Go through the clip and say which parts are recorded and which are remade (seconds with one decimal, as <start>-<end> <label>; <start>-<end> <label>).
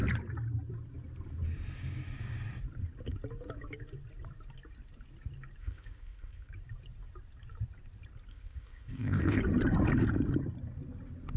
0.0-5.6 recorded; 5.6-6.5 remade; 6.5-8.3 recorded; 8.3-9.4 remade; 9.4-11.4 recorded